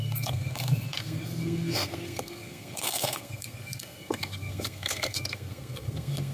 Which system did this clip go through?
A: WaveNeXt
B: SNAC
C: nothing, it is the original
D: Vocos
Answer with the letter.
B